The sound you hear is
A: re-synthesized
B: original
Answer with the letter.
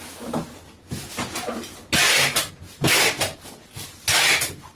B